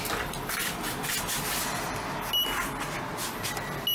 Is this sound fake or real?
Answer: real